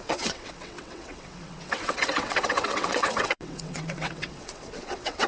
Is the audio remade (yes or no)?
yes